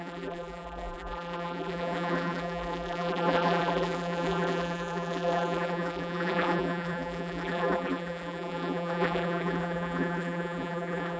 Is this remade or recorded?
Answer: remade